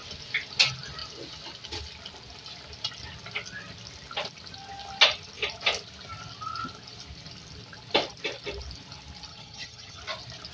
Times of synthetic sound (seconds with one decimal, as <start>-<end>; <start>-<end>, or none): 9.3-10.0